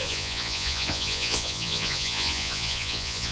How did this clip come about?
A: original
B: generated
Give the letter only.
B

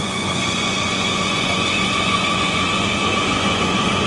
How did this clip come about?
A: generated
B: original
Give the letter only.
A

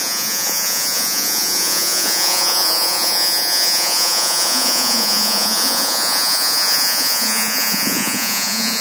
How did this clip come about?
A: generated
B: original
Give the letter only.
A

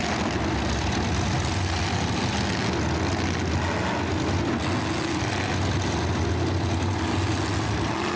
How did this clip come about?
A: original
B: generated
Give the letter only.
A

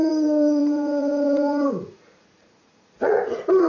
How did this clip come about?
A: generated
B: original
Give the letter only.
A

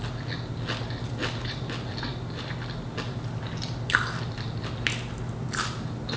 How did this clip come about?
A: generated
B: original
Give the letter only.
B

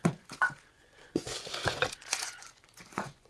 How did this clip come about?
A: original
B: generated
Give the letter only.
B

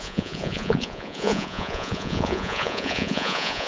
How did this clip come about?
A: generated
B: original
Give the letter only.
A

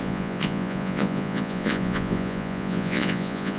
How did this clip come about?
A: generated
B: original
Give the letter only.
A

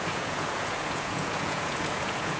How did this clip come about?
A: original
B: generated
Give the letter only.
B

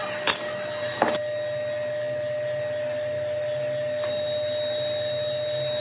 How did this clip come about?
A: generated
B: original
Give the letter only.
B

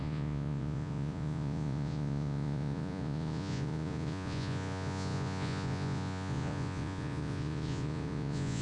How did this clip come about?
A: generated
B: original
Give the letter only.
A